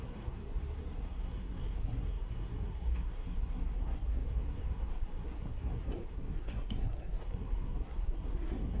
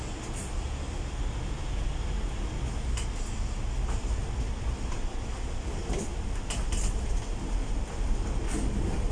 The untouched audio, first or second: second